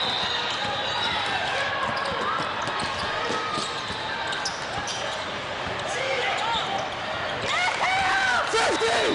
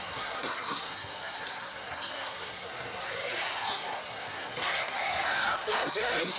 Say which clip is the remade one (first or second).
second